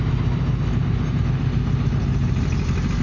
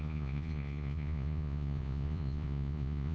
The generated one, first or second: second